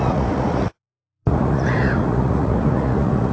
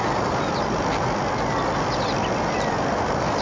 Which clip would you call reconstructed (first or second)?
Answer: first